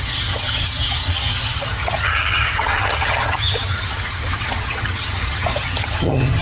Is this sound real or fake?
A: fake